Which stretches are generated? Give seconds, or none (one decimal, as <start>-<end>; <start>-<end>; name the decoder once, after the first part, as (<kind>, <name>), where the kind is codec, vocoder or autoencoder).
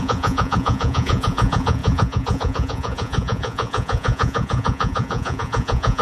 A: 0.0-6.0 (vocoder, Vocos)